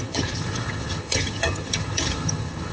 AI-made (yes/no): yes